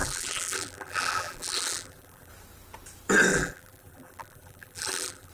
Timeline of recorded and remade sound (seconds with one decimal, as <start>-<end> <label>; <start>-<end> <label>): 0.0-2.3 remade; 2.3-3.3 recorded; 3.3-5.3 remade